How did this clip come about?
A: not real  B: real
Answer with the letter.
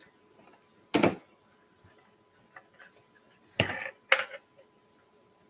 B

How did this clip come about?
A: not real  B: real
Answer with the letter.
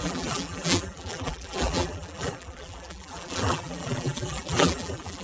A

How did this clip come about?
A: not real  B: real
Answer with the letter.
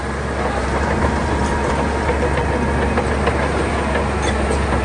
B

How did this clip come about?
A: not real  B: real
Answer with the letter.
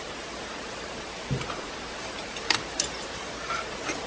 A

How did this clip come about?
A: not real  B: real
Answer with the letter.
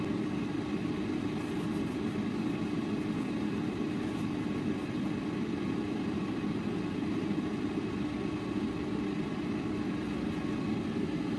B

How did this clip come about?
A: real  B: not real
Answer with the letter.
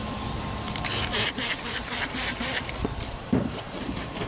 B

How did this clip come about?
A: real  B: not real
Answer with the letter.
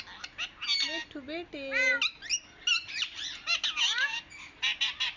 A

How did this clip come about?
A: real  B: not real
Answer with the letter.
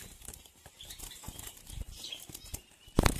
B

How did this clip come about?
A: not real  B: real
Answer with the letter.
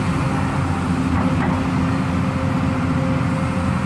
B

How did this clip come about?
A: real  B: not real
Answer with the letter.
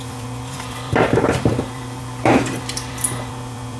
B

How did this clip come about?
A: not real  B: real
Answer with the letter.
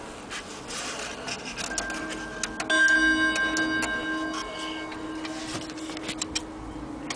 B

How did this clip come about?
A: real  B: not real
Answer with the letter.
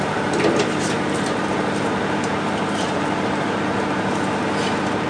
B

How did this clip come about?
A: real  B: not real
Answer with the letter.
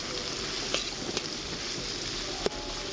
A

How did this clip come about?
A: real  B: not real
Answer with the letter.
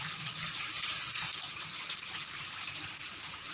B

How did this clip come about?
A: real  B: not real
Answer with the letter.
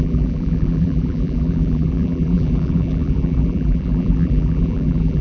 B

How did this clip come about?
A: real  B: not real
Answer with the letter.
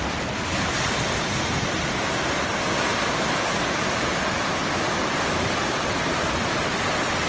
A